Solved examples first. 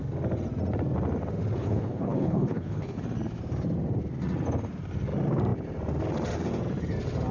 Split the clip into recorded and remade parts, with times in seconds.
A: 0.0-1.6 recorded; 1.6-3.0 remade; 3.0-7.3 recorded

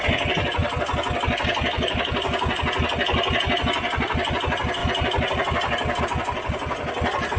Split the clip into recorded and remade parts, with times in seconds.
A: 0.0-7.4 recorded